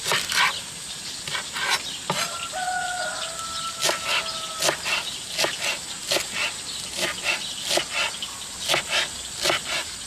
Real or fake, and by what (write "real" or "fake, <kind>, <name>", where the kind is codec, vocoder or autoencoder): real